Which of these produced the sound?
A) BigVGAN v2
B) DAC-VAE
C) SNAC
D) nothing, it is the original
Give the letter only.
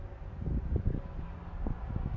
D